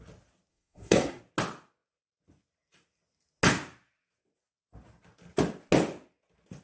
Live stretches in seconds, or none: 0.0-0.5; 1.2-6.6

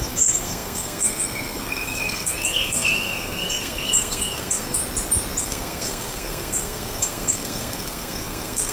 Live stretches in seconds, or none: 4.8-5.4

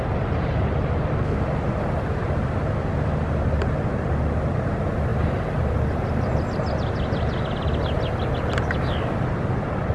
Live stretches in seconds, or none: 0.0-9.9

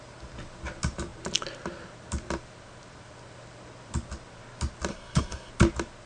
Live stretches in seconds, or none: 0.0-4.9; 5.5-6.1